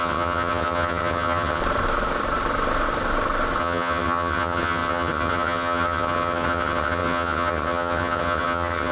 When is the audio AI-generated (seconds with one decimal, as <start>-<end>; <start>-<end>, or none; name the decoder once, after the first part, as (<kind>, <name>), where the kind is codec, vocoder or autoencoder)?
0.0-1.6 (vocoder, HiFi-GAN); 3.6-8.9